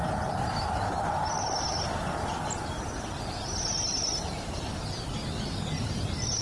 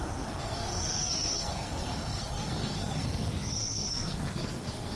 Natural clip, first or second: first